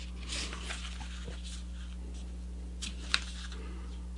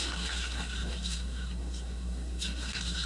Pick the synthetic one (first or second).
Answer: second